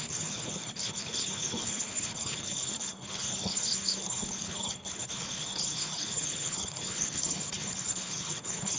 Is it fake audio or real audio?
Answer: fake